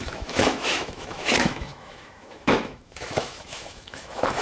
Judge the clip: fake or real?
fake